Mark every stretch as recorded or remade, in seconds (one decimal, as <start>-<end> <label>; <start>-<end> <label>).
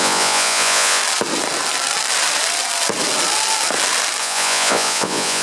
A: 0.0-1.0 remade; 1.0-4.2 recorded; 4.2-5.4 remade